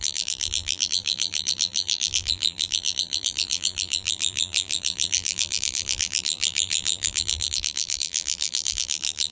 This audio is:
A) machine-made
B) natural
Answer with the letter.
A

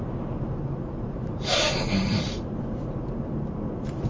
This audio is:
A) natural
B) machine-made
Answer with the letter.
B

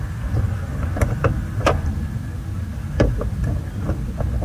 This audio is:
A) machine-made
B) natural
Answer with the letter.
B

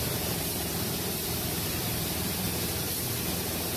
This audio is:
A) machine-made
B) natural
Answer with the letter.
A